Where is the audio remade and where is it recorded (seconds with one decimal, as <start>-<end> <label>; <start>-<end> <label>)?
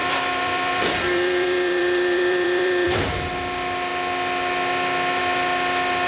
0.0-3.3 remade; 3.3-6.1 recorded